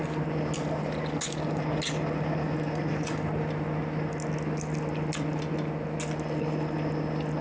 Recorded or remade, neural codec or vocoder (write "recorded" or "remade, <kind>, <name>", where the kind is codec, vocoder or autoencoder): recorded